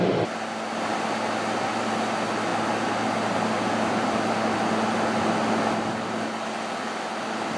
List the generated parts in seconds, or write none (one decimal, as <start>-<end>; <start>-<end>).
none